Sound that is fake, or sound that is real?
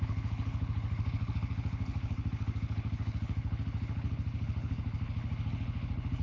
fake